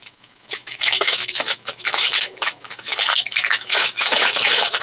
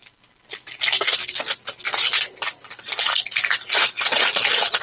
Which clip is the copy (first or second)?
first